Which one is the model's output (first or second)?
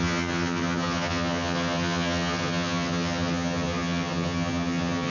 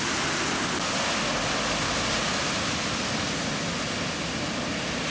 first